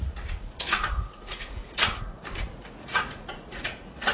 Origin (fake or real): fake